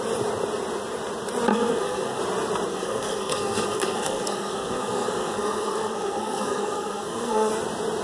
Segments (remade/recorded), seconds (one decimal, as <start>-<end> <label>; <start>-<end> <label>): 0.0-1.5 recorded; 1.5-2.2 remade; 2.2-2.7 recorded; 2.7-7.5 remade; 7.5-8.0 recorded